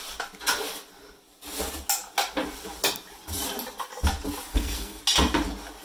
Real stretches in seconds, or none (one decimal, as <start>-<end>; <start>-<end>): 0.0-4.5; 5.0-5.8